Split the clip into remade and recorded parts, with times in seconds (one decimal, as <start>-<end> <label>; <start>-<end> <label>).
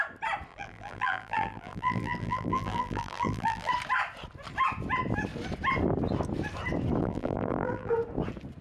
0.0-0.5 recorded; 0.5-3.7 remade; 3.7-7.0 recorded; 7.0-7.9 remade; 7.9-8.6 recorded